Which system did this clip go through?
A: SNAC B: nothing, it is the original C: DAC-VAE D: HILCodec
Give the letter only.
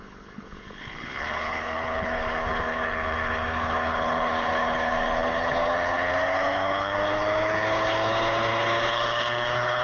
D